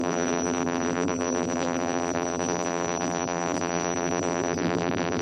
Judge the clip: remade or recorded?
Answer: remade